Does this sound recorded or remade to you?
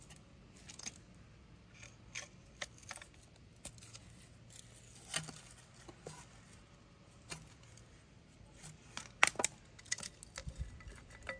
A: recorded